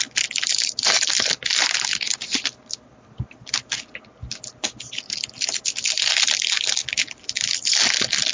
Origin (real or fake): real